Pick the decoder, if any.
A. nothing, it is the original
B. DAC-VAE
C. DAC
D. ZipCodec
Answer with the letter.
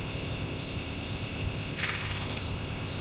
D